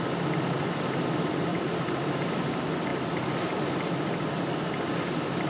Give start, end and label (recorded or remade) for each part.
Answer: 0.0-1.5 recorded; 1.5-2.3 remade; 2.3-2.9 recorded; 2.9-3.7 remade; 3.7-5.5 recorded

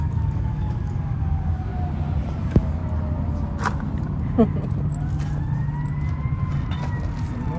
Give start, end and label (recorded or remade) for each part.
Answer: 0.0-1.7 remade; 1.7-2.4 recorded; 2.4-2.8 remade; 2.8-7.6 recorded

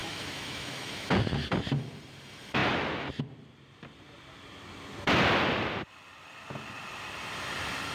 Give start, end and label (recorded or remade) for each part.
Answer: 0.0-1.1 remade; 1.1-7.9 recorded

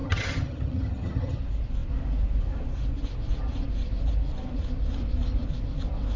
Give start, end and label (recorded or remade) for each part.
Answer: 0.0-1.4 remade; 1.4-6.2 recorded

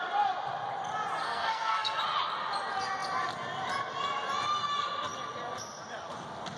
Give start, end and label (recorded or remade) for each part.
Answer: 0.0-1.2 recorded; 1.2-2.0 remade; 2.0-6.6 recorded

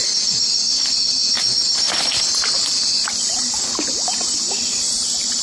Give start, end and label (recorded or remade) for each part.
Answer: 0.0-5.4 recorded